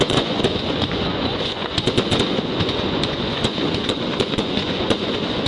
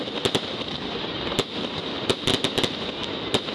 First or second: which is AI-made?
first